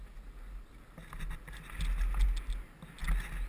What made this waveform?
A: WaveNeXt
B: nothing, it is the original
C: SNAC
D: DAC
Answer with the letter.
B